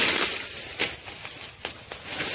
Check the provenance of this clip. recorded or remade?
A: recorded